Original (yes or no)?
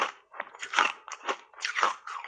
no